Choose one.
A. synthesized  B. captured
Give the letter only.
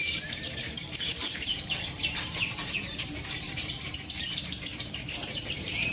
A